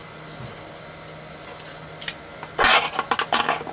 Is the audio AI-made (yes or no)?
no